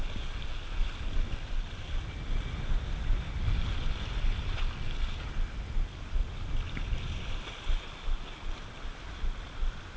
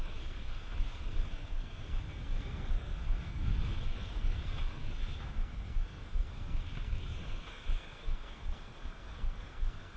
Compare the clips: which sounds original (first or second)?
first